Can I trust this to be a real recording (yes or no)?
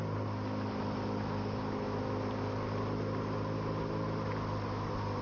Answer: yes